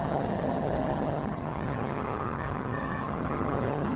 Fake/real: fake